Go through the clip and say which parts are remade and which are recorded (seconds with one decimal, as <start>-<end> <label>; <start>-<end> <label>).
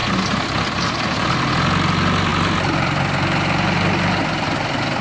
0.0-5.0 recorded